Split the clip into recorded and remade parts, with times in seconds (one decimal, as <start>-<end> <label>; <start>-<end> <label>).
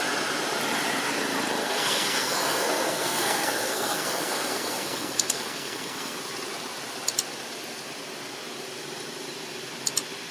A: 0.0-1.6 recorded; 1.6-6.2 remade; 6.2-10.3 recorded